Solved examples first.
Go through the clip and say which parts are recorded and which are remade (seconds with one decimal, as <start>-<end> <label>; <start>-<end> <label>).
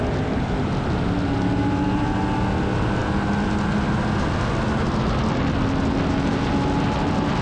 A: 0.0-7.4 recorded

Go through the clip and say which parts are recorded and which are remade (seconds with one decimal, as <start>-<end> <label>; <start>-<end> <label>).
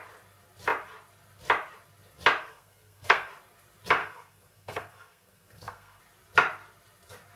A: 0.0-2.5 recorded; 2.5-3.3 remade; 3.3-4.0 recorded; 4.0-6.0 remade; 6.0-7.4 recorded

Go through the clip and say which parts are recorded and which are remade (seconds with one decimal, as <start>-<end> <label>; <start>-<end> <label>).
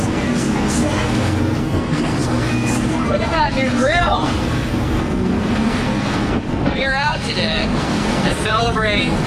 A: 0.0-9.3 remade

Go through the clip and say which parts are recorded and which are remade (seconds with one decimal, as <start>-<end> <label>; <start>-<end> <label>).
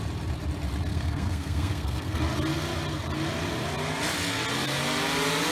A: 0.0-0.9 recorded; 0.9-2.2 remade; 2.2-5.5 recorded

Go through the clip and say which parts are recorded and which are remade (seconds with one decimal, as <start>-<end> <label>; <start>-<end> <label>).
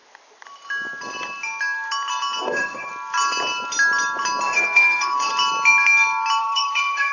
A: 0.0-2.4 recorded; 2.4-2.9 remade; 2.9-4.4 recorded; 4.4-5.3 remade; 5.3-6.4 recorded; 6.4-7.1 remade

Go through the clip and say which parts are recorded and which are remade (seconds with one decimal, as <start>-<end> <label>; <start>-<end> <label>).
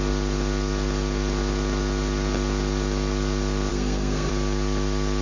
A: 0.0-3.7 recorded; 3.7-4.3 remade; 4.3-5.2 recorded